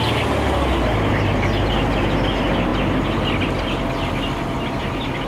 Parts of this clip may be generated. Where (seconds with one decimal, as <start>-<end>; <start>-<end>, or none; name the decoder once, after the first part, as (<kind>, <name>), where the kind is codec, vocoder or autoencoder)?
none